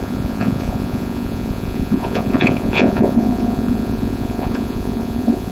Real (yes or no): no